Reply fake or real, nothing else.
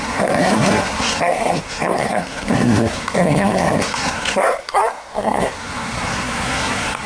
fake